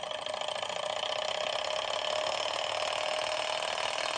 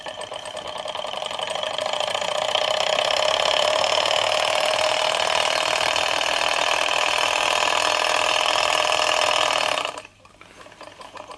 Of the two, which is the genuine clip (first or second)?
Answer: first